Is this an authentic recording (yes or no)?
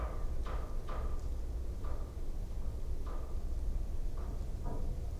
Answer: yes